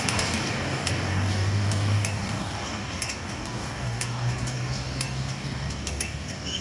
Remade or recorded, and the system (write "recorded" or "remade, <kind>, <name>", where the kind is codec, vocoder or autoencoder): remade, codec, DAC